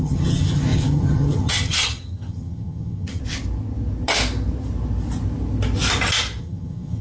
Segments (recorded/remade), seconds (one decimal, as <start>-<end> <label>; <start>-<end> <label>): 0.0-3.2 remade; 3.2-6.4 recorded; 6.4-7.0 remade